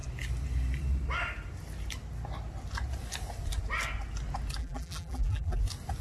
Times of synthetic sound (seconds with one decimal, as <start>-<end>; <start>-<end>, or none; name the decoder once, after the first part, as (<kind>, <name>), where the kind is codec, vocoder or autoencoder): 4.6-5.6 (vocoder, BigVGAN v2)